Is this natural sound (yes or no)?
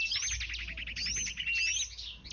yes